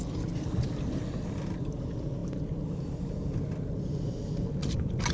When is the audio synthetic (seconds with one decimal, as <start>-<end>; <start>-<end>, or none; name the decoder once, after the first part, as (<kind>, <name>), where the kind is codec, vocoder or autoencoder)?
none